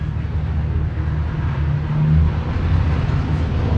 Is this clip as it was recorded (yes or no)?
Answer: yes